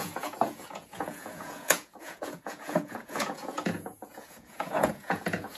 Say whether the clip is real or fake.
fake